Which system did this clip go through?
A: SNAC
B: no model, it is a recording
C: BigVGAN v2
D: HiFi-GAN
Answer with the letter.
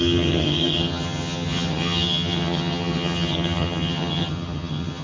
D